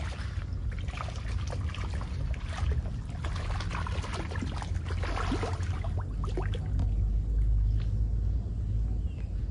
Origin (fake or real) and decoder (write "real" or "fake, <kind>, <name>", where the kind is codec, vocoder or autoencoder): real